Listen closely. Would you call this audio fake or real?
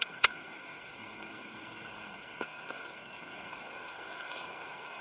fake